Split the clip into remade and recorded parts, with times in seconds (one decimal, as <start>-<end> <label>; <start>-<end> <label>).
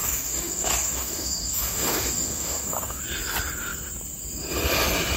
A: 0.0-3.0 remade; 3.0-5.2 recorded